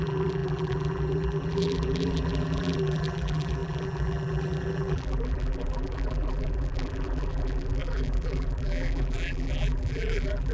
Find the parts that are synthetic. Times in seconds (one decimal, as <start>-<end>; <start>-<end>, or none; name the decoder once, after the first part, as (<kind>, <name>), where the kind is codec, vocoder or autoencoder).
0.0-10.5 (vocoder, BigVGAN v2)